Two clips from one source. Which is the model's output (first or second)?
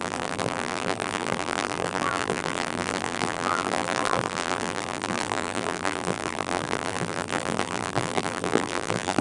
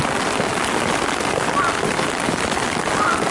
first